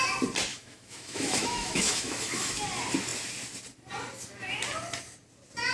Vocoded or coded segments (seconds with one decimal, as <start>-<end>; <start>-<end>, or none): 0.5-2.6